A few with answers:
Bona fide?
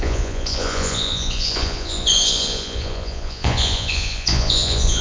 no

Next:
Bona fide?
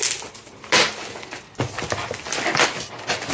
yes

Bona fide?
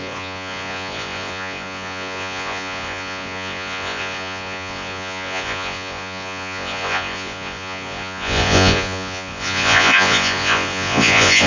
no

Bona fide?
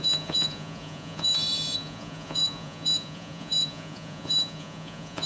no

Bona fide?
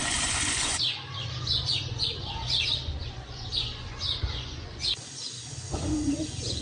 no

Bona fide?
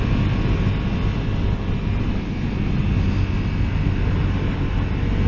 yes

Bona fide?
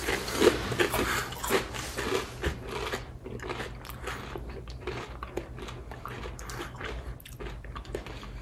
yes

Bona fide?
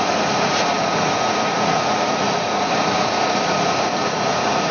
no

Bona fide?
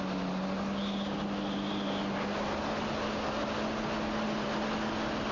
yes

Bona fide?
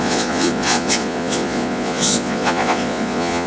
no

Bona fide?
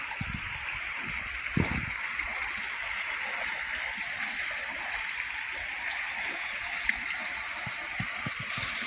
yes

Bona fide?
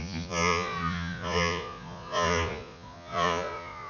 no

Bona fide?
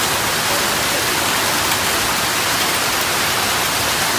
yes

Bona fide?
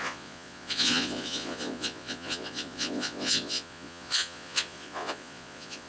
no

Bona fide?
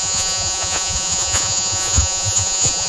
no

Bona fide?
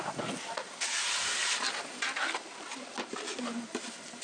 yes